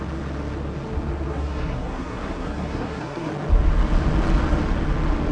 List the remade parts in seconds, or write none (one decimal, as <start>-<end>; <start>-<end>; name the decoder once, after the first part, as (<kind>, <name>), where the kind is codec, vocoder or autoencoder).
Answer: 1.3-3.3 (codec, SNAC)